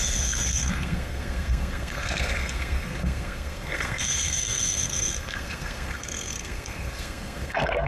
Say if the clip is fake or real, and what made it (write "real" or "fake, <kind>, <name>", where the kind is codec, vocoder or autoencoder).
fake, codec, SNAC